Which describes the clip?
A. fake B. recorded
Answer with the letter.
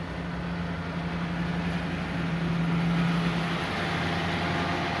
B